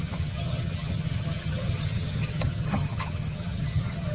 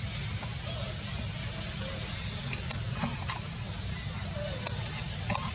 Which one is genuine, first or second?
second